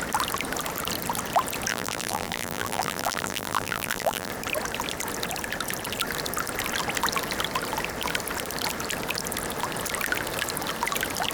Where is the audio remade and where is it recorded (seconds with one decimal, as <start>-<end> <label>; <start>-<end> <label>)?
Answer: 0.0-1.7 recorded; 1.7-4.3 remade; 4.3-11.3 recorded